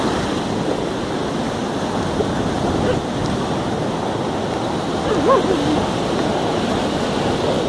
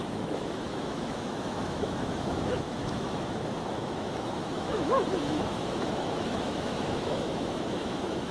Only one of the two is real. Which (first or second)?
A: first